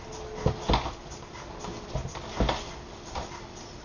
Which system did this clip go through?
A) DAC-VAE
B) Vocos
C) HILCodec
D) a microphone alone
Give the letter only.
D